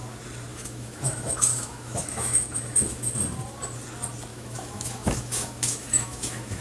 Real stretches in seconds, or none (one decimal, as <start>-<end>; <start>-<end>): 0.0-0.5; 3.1-4.3